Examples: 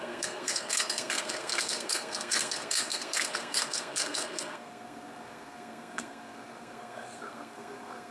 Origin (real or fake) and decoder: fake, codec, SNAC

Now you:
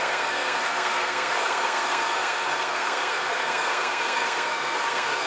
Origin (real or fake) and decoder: fake, codec, SNAC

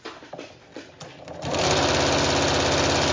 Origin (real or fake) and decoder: real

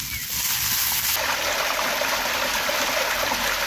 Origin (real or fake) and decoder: real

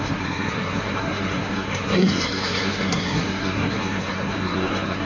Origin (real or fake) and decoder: fake, codec, SNAC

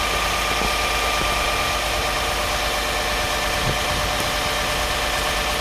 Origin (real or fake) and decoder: real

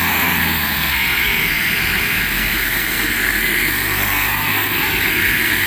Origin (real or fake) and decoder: fake, codec, SNAC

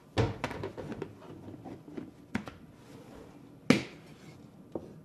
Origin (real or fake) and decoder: real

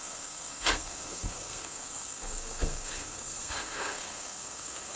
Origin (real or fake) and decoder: fake, codec, SNAC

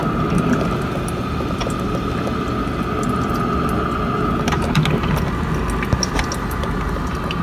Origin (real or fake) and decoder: real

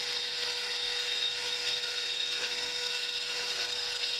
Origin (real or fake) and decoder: fake, codec, SNAC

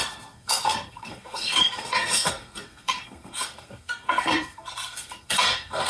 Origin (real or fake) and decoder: fake, codec, SNAC